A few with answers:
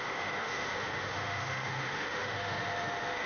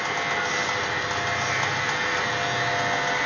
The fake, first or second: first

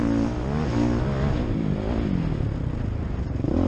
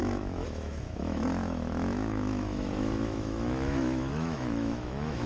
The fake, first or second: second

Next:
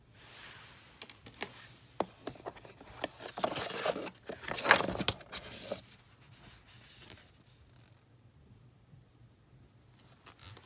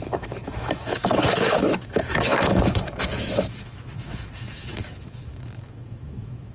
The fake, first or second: second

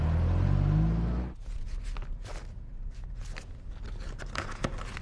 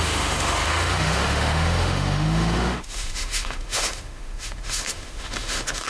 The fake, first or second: second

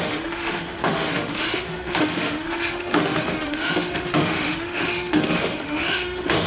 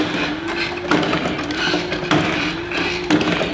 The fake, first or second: first